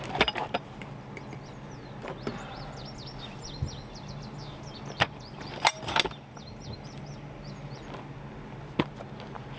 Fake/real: real